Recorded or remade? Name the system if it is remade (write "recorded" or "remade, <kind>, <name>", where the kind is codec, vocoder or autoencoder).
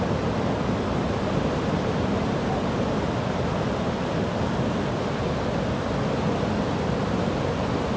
recorded